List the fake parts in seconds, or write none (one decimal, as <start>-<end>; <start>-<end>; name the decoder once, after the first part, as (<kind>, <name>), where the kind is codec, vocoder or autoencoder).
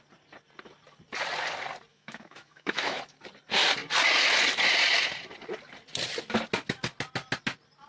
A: 1.9-3.0 (autoencoder, DAC-VAE)